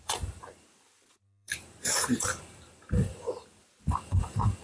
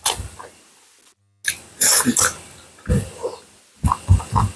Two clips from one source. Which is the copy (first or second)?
first